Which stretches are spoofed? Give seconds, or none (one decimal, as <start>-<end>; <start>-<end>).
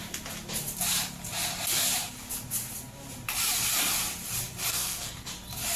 4.7-5.3